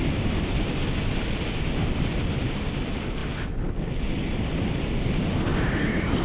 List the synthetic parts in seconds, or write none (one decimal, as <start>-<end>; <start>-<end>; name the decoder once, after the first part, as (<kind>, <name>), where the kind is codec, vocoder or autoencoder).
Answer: 0.0-3.2 (vocoder, BigVGAN v2); 4.4-5.5